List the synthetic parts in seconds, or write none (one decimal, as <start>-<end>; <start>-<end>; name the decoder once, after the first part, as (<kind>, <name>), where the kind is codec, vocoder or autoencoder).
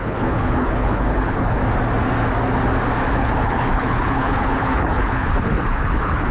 0.0-1.6 (codec, HILCodec); 3.1-6.3